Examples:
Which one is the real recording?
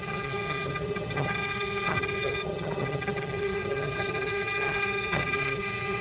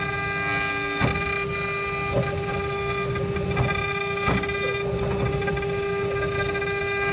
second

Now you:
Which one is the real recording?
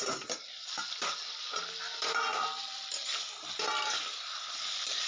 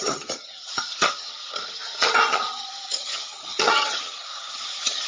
first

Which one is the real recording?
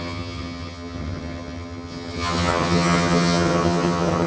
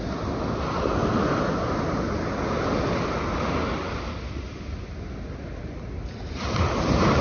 second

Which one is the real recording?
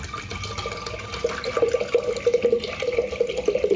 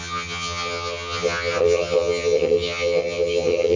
first